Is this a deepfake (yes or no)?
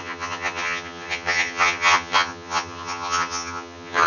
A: yes